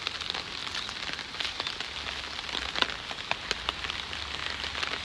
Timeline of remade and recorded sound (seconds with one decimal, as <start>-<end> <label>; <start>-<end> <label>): 0.0-5.0 recorded